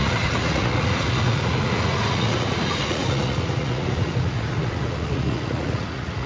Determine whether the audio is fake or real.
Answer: fake